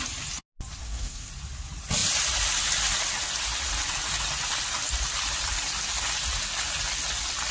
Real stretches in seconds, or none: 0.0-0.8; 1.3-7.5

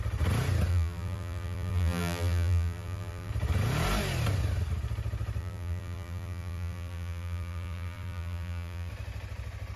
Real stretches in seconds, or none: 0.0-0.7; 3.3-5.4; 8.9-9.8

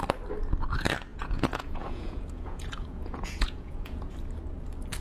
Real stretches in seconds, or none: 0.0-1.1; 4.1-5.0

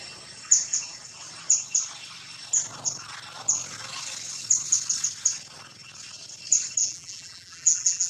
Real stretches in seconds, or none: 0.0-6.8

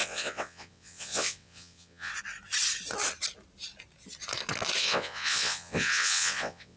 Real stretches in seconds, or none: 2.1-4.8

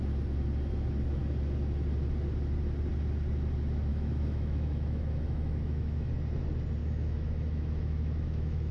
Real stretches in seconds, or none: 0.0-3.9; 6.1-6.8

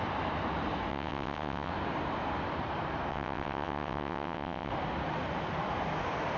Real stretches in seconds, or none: 0.0-0.9; 1.7-3.1; 4.7-6.4

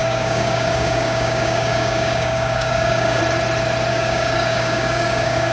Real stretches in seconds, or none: 3.2-3.9